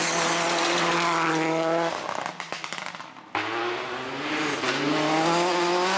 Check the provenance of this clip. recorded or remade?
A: recorded